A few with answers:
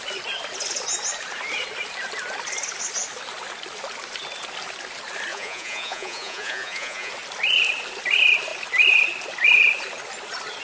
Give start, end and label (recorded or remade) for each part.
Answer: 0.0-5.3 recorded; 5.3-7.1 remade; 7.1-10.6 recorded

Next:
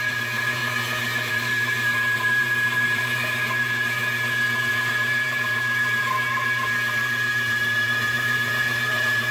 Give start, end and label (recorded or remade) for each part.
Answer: 0.0-0.6 remade; 0.6-1.3 recorded; 1.3-4.0 remade; 4.0-4.7 recorded; 4.7-9.3 remade

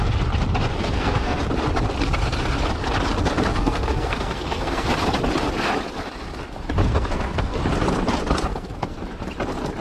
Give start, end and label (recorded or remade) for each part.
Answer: 0.0-0.8 recorded; 0.8-1.4 remade; 1.4-3.5 recorded; 3.5-4.9 remade; 4.9-6.8 recorded; 6.8-7.6 remade; 7.6-8.5 recorded; 8.5-9.0 remade; 9.0-9.8 recorded

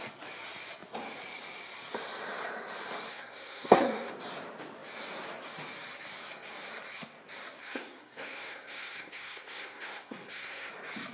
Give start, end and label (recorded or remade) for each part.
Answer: 0.0-3.1 recorded; 3.1-4.1 remade; 4.1-7.6 recorded; 7.6-10.7 remade; 10.7-11.1 recorded